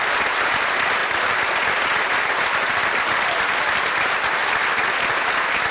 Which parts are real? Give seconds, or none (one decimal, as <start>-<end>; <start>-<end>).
1.0-1.5